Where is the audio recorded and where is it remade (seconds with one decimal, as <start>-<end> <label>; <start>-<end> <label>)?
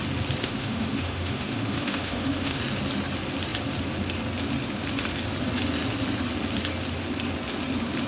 0.0-0.4 recorded; 0.4-2.6 remade; 2.6-8.1 recorded